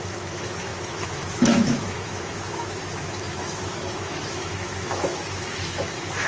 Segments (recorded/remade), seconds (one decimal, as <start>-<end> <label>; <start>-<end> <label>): 0.0-6.3 remade